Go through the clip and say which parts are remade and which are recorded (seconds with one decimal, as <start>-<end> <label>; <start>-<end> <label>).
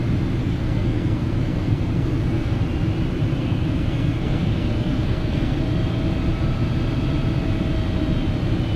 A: 0.0-0.4 recorded; 0.4-2.6 remade; 2.6-3.4 recorded; 3.4-5.6 remade; 5.6-8.8 recorded